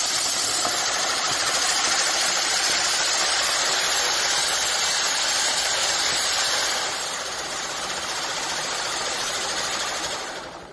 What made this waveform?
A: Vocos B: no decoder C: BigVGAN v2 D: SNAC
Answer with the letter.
B